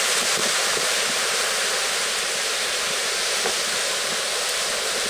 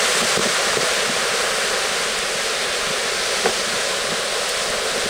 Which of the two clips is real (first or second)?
second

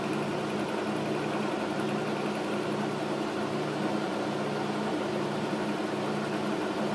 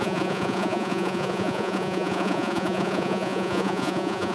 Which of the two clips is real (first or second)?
first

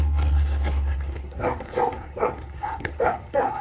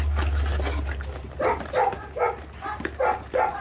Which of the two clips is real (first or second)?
second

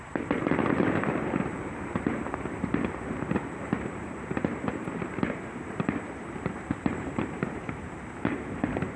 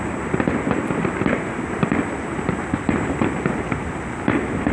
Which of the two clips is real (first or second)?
second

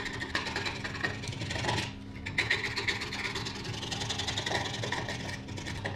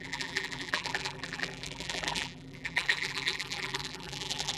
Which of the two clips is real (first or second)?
first